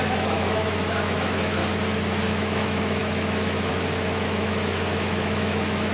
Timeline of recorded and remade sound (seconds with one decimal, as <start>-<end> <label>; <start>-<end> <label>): 0.0-1.6 remade; 1.6-2.3 recorded; 2.3-5.9 remade